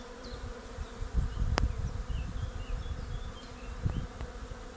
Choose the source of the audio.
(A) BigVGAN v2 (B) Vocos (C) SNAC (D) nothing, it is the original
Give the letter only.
D